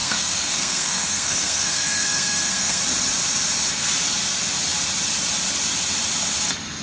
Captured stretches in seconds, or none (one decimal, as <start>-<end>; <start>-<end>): 2.8-6.8